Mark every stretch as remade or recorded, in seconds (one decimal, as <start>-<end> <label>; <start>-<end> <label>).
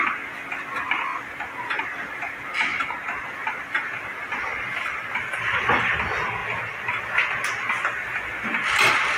0.0-9.2 recorded